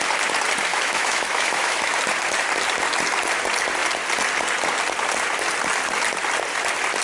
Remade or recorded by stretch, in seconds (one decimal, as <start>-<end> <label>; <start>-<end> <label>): 0.0-0.7 recorded; 0.7-2.0 remade; 2.0-7.0 recorded